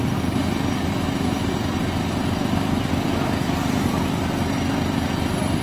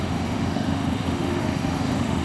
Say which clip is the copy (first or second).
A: second